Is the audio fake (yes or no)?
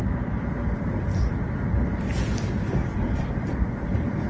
no